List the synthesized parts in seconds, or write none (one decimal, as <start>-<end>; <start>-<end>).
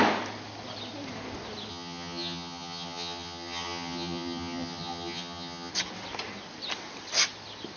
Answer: 1.7-5.7